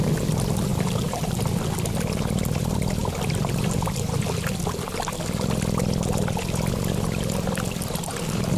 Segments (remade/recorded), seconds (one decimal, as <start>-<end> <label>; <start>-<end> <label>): 0.0-0.7 recorded; 0.7-1.4 remade; 1.4-8.6 recorded